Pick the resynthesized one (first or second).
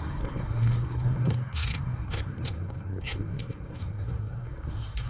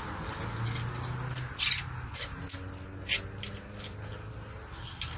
first